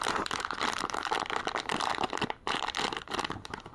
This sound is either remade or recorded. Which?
remade